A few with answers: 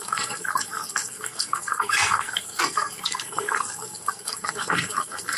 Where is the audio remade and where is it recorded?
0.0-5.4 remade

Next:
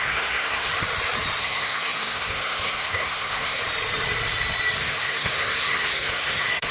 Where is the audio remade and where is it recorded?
0.0-0.7 remade; 0.7-1.4 recorded; 1.4-3.6 remade; 3.6-4.8 recorded; 4.8-6.7 remade